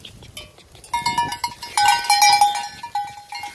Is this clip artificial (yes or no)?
no